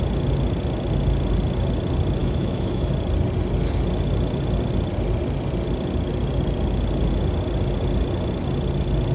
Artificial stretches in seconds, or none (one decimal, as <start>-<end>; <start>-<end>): 2.2-2.9